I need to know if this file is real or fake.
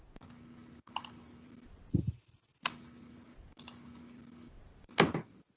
real